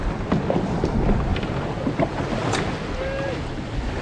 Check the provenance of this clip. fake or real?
real